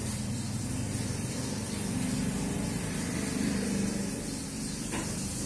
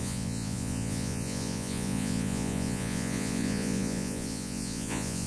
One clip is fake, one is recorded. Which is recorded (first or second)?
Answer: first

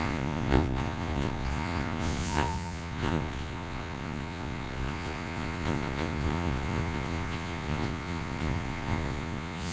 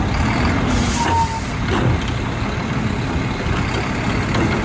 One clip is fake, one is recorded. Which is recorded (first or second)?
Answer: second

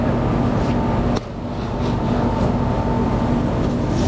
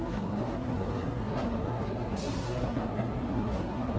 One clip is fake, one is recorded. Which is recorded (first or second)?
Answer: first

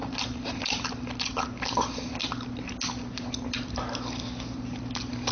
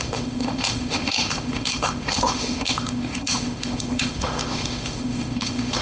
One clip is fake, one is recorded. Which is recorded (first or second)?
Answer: first